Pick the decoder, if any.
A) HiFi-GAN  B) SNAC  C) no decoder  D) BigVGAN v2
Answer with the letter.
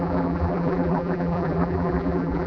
D